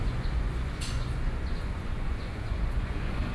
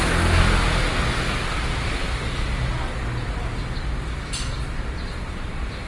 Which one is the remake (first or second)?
first